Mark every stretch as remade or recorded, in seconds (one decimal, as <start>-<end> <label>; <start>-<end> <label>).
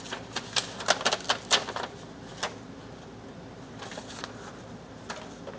0.0-5.6 recorded